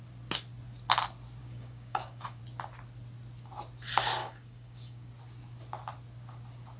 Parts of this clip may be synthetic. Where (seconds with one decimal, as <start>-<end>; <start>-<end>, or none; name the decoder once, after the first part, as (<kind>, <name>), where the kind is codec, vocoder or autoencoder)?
1.4-2.4 (codec, DAC); 4.2-5.1